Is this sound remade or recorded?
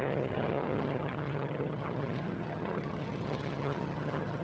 remade